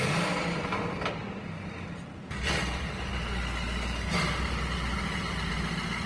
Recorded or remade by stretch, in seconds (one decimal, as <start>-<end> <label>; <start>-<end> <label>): 0.0-6.1 recorded